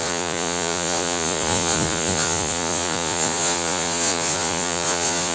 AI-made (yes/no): yes